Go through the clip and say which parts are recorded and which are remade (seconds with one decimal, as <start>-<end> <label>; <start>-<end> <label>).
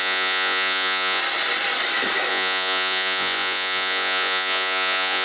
0.0-1.2 remade; 1.2-2.3 recorded; 2.3-5.2 remade